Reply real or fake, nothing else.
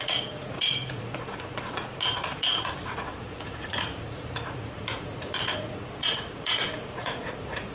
fake